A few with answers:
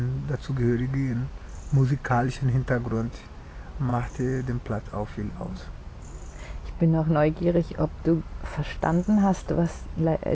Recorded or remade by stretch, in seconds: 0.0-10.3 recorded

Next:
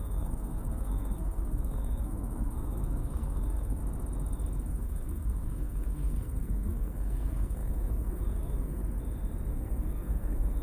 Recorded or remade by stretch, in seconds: 0.0-3.8 remade; 3.8-4.7 recorded; 4.7-8.8 remade; 8.8-9.5 recorded; 9.5-10.6 remade

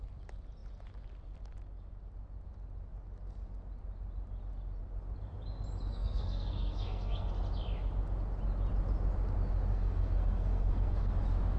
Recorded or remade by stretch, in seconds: 0.0-5.9 recorded; 5.9-7.3 remade; 7.3-9.7 recorded; 9.7-11.1 remade; 11.1-11.6 recorded

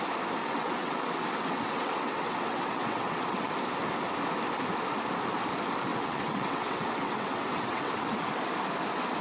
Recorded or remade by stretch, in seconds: 0.0-0.4 recorded; 0.4-3.5 remade; 3.5-5.9 recorded; 5.9-8.4 remade; 8.4-9.2 recorded

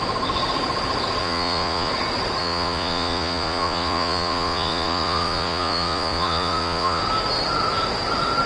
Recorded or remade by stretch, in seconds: 0.0-1.2 recorded; 1.2-1.9 remade; 1.9-2.4 recorded; 2.4-7.0 remade; 7.0-8.5 recorded